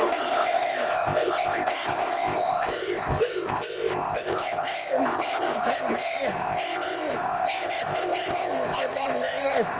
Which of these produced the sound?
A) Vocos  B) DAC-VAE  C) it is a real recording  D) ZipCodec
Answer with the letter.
D